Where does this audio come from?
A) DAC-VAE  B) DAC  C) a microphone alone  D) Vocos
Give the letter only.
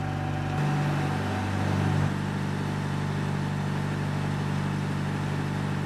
C